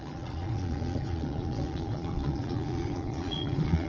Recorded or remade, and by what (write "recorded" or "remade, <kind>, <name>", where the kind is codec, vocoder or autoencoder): remade, vocoder, Vocos